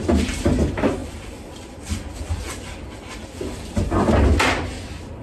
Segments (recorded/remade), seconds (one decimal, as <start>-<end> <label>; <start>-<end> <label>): 0.0-1.0 recorded; 1.0-3.9 remade; 3.9-5.2 recorded